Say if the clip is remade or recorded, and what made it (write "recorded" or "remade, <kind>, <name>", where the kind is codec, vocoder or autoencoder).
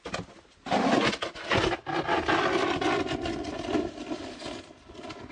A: recorded